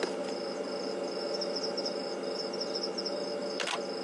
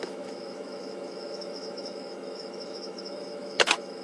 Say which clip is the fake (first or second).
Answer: second